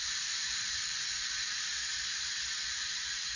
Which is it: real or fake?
fake